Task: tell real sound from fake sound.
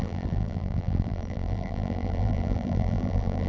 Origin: fake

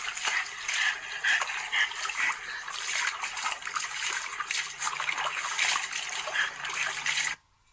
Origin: real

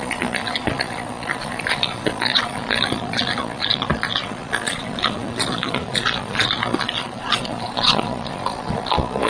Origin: fake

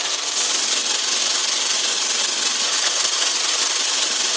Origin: real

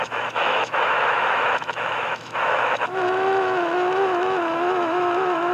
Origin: fake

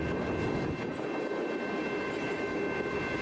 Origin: real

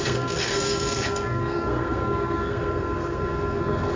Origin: fake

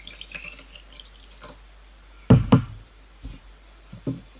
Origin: real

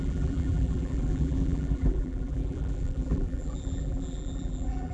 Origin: fake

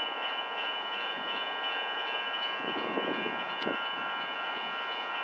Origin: fake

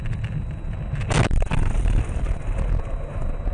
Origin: real